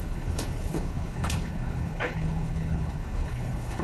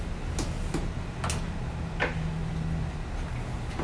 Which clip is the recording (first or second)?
second